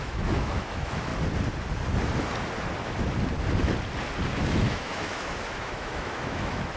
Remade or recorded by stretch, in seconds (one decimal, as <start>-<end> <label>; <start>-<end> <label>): 0.0-1.1 remade; 1.1-4.3 recorded; 4.3-6.8 remade

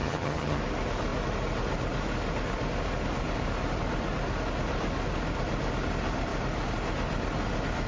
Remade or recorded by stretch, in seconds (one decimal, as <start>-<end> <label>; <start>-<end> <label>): 0.0-0.6 remade; 0.6-7.9 recorded

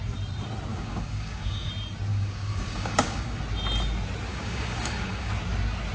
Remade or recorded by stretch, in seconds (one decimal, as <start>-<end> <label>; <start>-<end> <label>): 0.0-0.7 recorded; 0.7-1.7 remade; 1.7-2.1 recorded; 2.1-3.4 remade; 3.4-4.3 recorded; 4.3-5.3 remade; 5.3-5.9 recorded

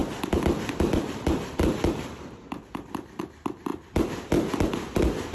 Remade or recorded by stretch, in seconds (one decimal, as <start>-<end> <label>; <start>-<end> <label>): 0.0-3.2 remade; 3.2-5.3 recorded

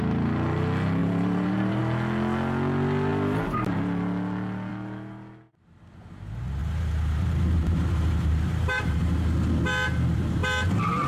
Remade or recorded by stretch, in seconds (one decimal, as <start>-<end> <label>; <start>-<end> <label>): 0.0-1.0 recorded; 1.0-1.8 remade; 1.8-6.6 recorded; 6.6-9.0 remade; 9.0-11.1 recorded

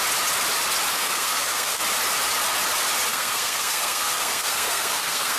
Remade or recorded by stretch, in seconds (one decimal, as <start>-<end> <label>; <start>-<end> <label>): 0.0-0.9 recorded; 0.9-1.8 remade; 1.8-3.1 recorded; 3.1-5.4 remade

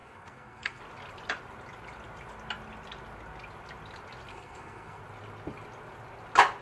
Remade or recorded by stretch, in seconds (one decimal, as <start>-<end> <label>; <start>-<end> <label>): 0.0-0.8 remade; 0.8-4.3 recorded; 4.3-5.0 remade; 5.0-6.6 recorded

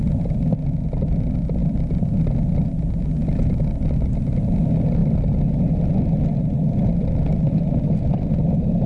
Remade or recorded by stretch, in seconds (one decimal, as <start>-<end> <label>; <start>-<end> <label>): 0.0-8.9 recorded